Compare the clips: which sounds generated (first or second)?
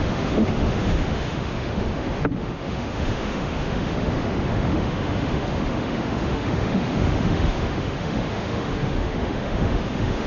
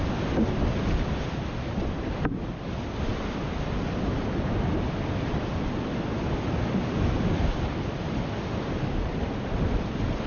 first